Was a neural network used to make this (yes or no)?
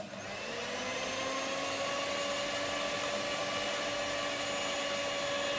no